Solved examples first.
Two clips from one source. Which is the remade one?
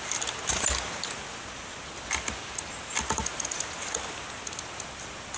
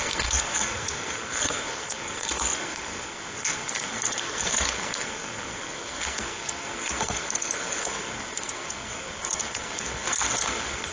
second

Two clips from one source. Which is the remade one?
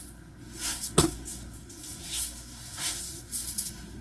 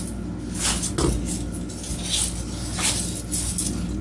first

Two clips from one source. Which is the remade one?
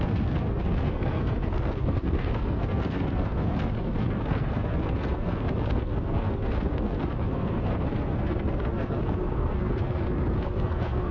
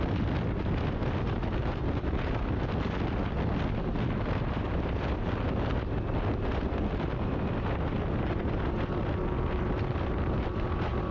first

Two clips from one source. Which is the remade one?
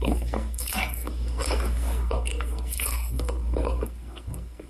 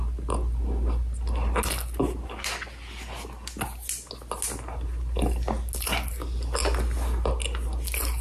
first